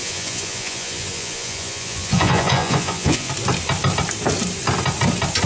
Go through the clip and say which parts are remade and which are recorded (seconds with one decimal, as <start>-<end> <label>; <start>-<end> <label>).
0.0-3.3 remade; 3.3-5.5 recorded